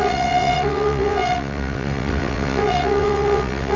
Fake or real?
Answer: fake